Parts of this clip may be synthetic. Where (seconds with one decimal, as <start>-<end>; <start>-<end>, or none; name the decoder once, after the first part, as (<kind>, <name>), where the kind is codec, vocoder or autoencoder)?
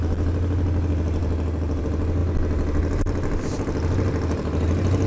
none